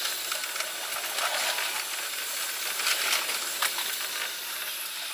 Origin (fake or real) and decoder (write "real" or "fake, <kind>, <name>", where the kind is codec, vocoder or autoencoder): real